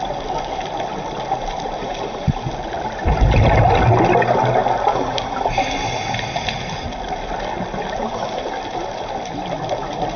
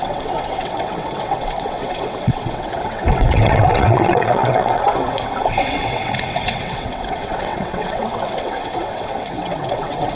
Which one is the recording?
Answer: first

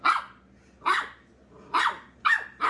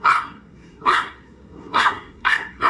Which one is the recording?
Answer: first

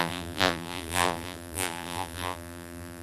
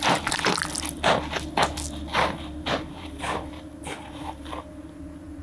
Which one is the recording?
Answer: second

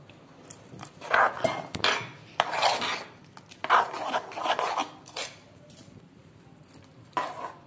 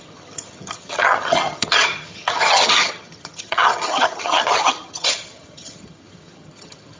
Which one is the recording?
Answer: first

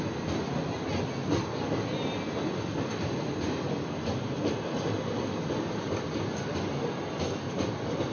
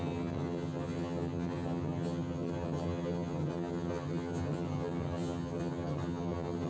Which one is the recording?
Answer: first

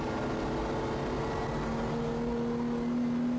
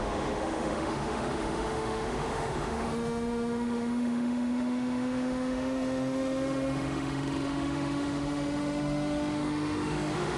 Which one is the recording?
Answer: first